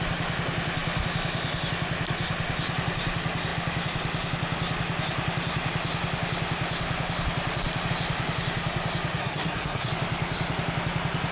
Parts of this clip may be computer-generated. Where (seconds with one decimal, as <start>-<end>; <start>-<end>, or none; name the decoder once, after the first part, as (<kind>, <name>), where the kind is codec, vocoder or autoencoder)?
9.2-9.9 (codec, SNAC)